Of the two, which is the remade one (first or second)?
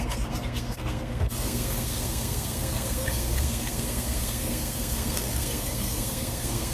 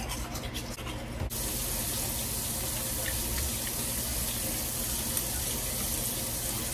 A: first